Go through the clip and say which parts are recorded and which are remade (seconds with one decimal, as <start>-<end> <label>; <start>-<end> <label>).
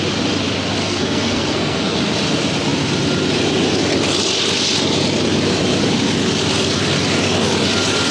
0.0-0.8 recorded; 0.8-2.0 remade; 2.0-8.1 recorded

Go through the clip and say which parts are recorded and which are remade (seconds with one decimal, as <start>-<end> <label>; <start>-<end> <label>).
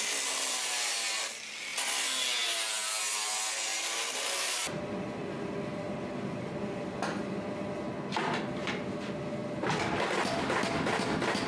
0.0-11.5 recorded